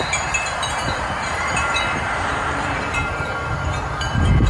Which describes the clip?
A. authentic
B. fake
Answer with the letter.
B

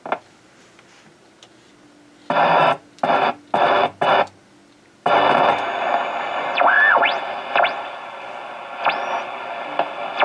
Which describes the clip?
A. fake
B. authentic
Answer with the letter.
B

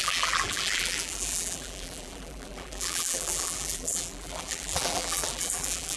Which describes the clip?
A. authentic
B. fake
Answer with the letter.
B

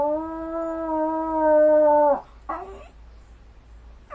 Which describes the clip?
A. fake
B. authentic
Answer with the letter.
B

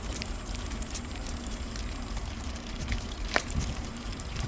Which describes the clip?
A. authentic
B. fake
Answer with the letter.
B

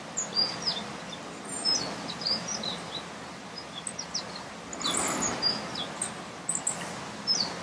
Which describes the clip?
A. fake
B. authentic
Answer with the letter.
B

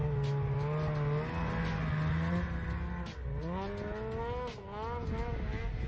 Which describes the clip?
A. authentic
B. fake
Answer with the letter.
A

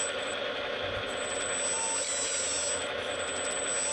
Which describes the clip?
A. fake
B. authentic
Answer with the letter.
B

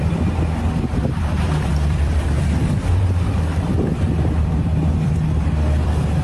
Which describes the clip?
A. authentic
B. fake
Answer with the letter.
B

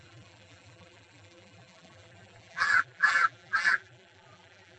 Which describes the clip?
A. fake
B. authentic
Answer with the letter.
A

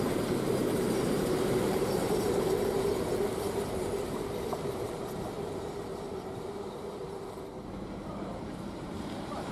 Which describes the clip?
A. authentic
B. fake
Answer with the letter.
B